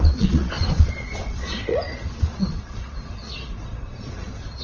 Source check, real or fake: fake